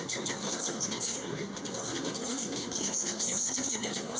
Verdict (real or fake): fake